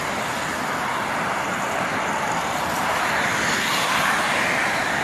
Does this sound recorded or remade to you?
recorded